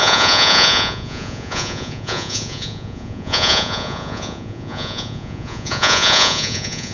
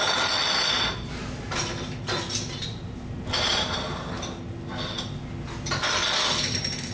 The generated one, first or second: first